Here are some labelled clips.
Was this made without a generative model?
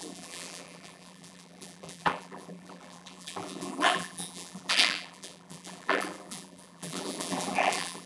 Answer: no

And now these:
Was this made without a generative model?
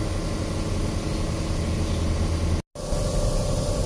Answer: yes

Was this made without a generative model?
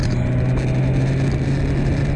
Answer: yes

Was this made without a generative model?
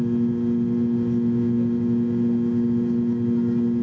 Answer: yes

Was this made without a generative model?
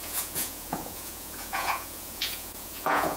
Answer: no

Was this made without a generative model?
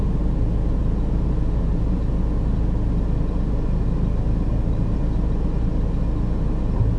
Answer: yes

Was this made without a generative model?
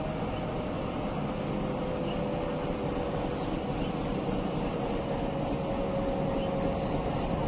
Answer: yes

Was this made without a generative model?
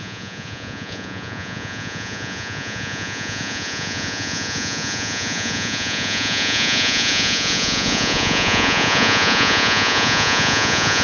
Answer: no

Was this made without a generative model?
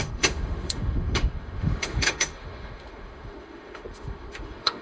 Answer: no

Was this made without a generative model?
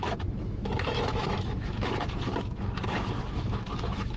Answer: no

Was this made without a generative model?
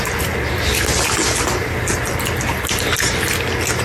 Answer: yes